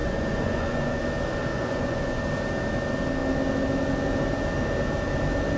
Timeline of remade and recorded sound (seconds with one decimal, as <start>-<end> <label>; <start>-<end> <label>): 0.0-1.0 remade; 1.0-1.5 recorded; 1.5-2.2 remade; 2.2-5.6 recorded